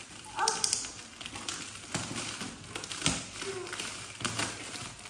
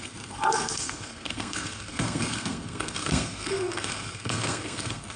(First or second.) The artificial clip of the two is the second